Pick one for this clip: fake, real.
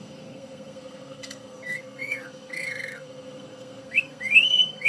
fake